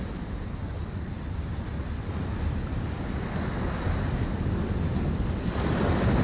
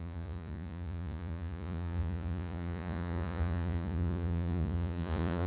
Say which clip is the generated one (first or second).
second